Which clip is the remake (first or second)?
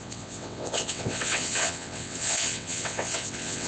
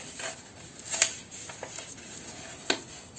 first